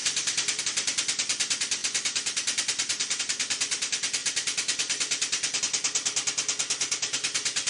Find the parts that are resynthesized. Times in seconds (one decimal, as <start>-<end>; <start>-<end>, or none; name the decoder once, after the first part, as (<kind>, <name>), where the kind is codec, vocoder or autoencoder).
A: 0.0-0.6 (vocoder, BigVGAN v2); 4.2-5.6